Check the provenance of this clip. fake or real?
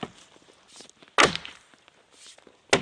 real